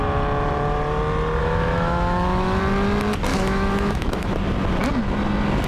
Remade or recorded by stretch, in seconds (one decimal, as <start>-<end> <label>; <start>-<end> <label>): 0.0-1.4 recorded; 1.4-2.6 remade; 2.6-3.3 recorded; 3.3-4.3 remade; 4.3-5.7 recorded